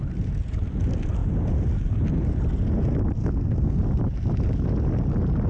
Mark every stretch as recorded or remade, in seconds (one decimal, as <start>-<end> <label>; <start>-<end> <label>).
0.0-3.2 recorded; 3.2-3.8 remade; 3.8-5.5 recorded